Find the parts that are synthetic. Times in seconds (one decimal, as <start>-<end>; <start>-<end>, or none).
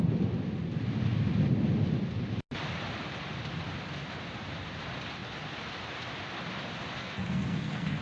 7.0-8.0